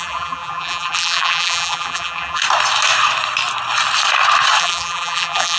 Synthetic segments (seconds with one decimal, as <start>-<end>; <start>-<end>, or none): 0.0-2.4; 4.6-5.6